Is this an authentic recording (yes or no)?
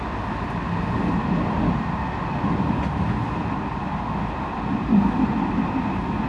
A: yes